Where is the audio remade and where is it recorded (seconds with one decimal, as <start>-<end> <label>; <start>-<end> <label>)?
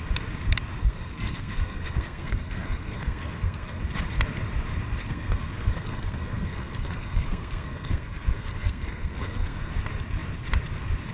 0.0-0.8 recorded; 0.8-3.8 remade; 3.8-5.1 recorded; 5.1-9.7 remade; 9.7-11.1 recorded